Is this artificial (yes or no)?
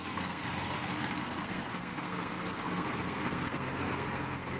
yes